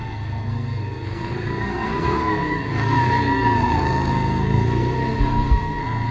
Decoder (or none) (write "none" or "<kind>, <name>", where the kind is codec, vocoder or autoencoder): codec, SNAC